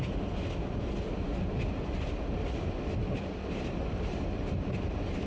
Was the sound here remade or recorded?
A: recorded